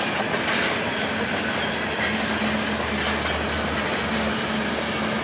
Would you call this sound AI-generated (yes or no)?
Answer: no